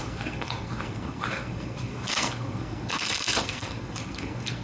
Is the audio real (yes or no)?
no